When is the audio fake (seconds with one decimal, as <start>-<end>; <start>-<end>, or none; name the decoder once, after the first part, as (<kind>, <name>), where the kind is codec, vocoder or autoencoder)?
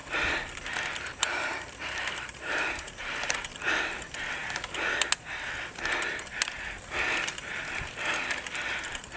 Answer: 0.9-4.0 (vocoder, BigVGAN v2)